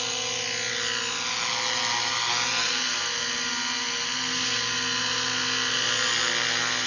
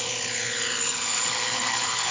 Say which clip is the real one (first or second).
first